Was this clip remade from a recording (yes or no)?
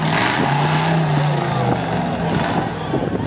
no